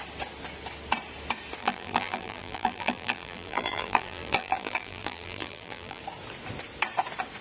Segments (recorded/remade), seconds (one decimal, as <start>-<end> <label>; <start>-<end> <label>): 0.0-1.6 recorded; 1.6-6.0 remade; 6.0-7.4 recorded